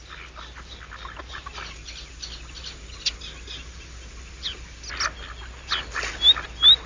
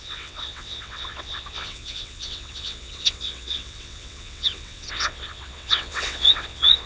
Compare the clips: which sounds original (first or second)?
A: first